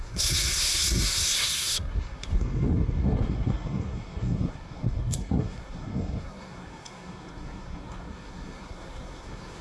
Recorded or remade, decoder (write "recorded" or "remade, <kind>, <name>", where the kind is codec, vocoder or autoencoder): remade, codec, SNAC